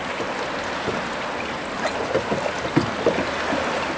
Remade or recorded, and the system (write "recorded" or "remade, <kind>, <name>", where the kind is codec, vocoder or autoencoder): recorded